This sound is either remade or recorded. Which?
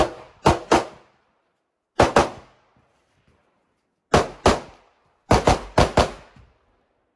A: recorded